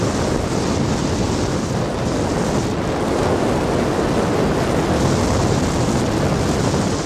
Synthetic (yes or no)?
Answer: no